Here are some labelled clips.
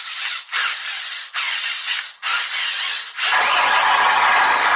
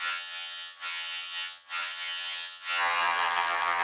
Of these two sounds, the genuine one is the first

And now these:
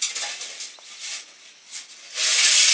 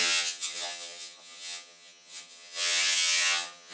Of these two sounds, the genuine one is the first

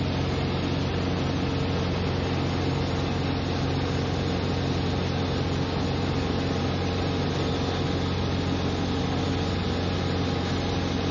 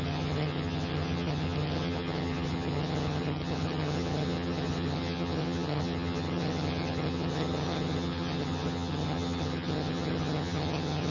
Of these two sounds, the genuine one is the first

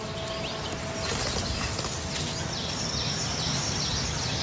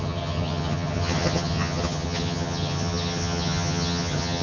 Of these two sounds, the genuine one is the first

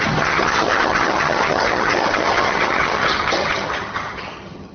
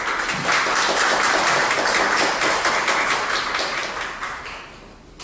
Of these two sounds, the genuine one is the second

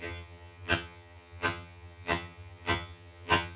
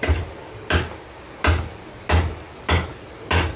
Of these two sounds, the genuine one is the second